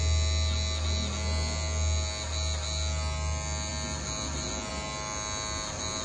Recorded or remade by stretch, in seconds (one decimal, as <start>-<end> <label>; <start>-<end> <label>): 0.0-6.0 recorded